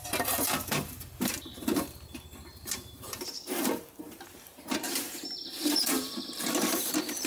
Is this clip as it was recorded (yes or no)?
no